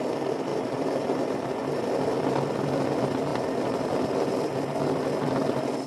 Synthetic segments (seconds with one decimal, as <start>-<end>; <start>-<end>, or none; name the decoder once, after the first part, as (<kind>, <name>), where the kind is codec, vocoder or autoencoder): 0.5-1.8 (vocoder, BigVGAN v2)